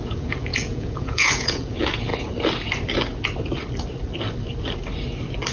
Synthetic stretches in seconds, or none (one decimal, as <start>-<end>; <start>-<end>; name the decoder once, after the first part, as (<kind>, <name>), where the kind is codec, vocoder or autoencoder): 0.0-2.1 (vocoder, Vocos)